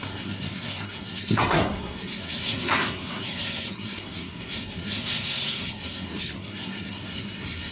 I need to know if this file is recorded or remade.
remade